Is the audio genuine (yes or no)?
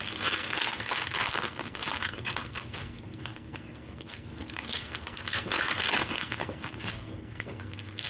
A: no